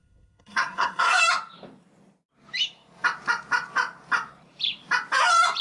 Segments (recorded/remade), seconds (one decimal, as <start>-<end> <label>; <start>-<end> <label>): 0.0-1.2 remade; 1.2-5.6 recorded